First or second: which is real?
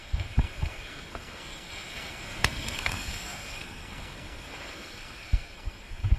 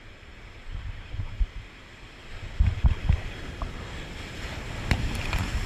second